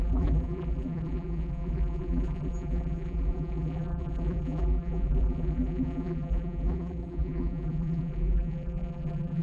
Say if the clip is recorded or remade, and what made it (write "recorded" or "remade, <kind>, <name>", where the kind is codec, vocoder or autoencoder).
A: remade, vocoder, BigVGAN v2